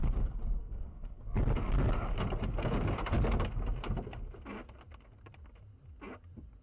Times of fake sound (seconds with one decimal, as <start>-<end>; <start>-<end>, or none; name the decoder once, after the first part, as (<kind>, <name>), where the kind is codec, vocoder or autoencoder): 0.6-1.2 (codec, SNAC)